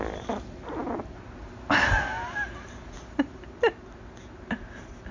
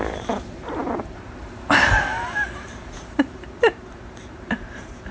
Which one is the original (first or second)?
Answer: first